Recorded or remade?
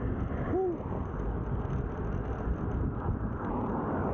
recorded